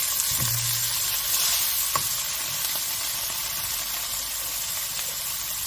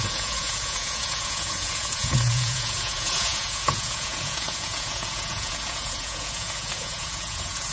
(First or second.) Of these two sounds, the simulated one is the second